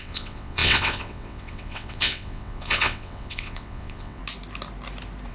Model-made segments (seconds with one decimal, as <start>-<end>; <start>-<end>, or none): 0.0-4.2